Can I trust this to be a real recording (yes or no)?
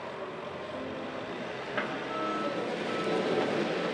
yes